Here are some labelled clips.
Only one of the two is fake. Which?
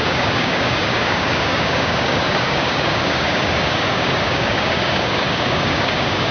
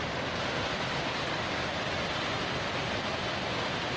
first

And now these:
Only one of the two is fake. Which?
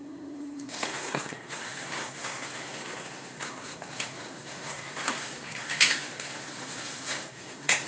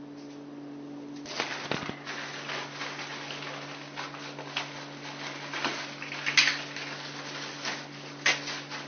first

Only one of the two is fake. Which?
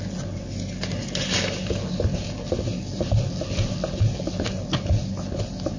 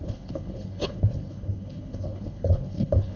second